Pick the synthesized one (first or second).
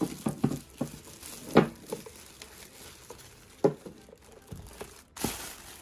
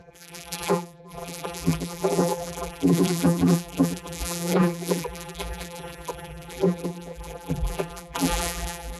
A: second